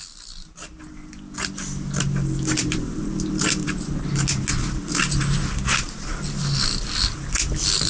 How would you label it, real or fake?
real